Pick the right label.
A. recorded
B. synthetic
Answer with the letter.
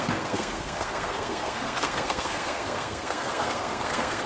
B